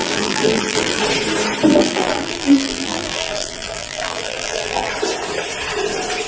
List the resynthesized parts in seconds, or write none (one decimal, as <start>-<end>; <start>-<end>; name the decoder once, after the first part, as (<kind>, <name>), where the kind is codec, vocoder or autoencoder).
0.0-1.0 (vocoder, BigVGAN v2); 1.7-4.9